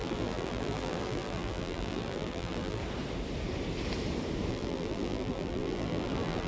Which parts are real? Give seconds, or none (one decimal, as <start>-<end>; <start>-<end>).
2.8-4.5